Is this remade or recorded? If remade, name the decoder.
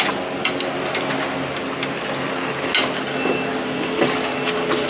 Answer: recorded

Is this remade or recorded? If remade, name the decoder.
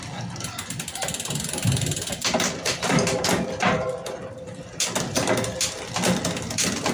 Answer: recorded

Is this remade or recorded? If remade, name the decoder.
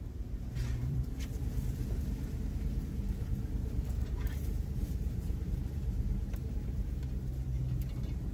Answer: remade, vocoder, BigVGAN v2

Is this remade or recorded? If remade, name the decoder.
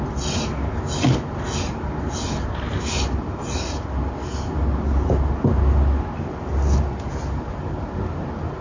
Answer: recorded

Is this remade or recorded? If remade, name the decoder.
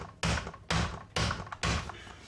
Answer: recorded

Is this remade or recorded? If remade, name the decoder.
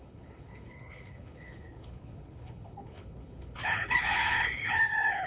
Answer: remade, codec, HILCodec